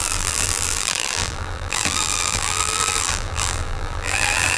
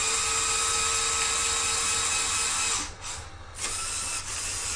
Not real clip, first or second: first